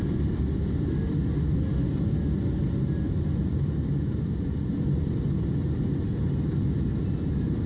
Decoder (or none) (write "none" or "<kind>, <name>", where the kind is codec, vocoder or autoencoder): none